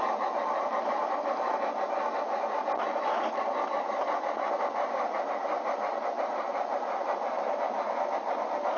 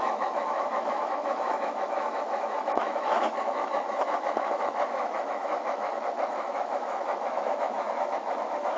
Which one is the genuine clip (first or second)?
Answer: first